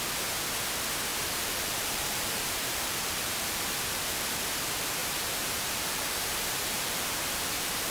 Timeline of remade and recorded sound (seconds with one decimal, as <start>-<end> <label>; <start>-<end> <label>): 0.0-1.1 recorded; 1.1-4.2 remade; 4.2-5.0 recorded; 5.0-7.9 remade